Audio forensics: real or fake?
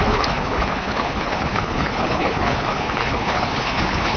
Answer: fake